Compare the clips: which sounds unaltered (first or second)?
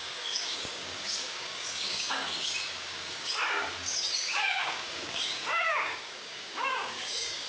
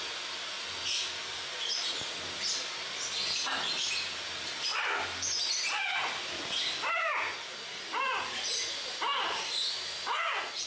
second